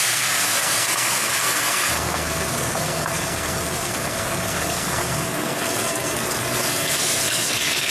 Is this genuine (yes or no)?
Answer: no